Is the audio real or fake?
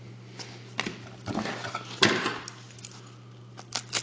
real